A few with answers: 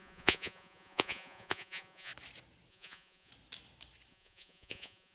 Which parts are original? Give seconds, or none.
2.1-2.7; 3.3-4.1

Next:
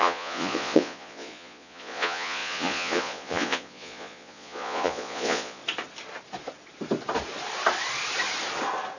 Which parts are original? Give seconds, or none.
5.6-9.0

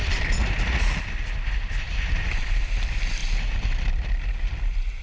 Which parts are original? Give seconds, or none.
0.0-0.4; 1.0-5.0

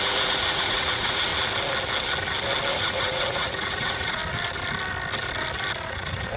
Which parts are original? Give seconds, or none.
1.3-2.7; 4.2-5.9